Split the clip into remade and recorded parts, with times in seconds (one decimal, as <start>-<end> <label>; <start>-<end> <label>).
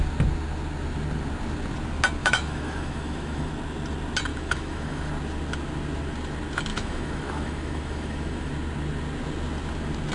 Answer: 0.0-2.2 recorded; 2.2-3.5 remade; 3.5-4.3 recorded; 4.3-5.1 remade; 5.1-6.7 recorded; 6.7-8.5 remade; 8.5-10.1 recorded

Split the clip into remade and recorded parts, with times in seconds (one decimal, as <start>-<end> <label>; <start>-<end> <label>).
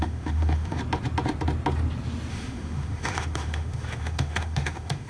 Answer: 0.0-0.8 remade; 0.8-2.3 recorded; 2.3-5.1 remade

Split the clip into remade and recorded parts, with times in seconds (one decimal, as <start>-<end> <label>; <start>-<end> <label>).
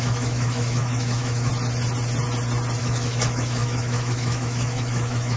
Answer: 0.0-1.5 remade; 1.5-2.8 recorded; 2.8-5.4 remade